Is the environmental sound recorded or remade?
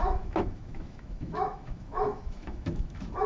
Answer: remade